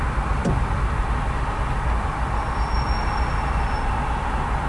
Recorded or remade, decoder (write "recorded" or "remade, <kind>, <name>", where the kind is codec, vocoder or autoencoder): recorded